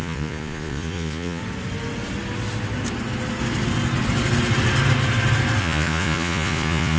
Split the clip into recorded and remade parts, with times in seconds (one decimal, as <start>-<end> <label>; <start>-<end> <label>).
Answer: 0.0-1.4 remade; 1.4-5.6 recorded; 5.6-7.0 remade